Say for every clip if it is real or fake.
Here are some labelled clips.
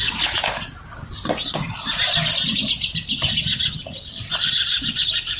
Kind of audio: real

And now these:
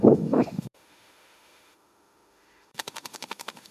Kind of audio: fake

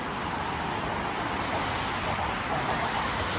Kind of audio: real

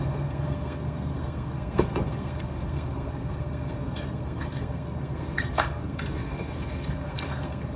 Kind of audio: fake